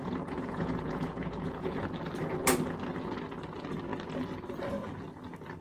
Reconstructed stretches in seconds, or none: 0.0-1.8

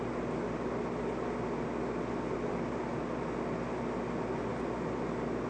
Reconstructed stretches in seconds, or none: none

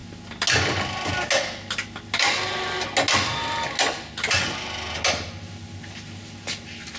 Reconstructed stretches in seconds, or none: none

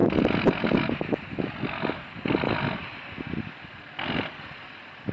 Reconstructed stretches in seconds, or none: none